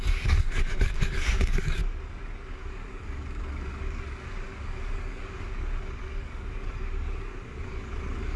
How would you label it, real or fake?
fake